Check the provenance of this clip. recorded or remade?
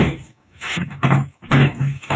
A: remade